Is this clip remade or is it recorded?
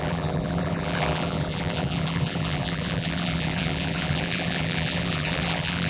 remade